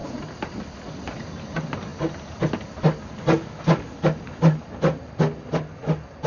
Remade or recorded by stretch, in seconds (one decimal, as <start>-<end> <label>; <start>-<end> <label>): 0.0-6.3 recorded